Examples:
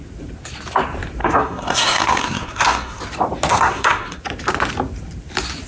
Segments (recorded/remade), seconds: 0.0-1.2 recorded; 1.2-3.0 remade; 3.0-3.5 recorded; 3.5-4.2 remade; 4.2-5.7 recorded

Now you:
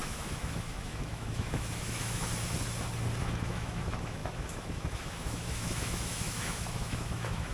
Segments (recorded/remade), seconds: 0.0-2.3 remade; 2.3-3.2 recorded; 3.2-7.5 remade

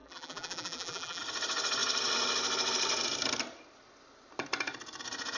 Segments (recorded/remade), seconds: 0.0-1.2 remade; 1.2-5.4 recorded